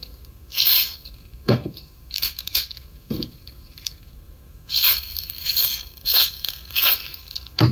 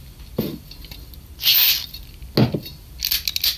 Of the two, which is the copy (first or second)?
first